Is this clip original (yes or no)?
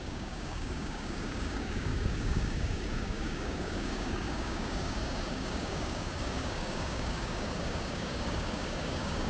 no